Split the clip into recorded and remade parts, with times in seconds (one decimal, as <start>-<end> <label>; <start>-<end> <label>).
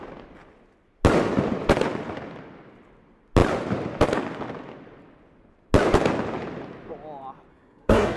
0.0-7.5 recorded; 7.5-8.2 remade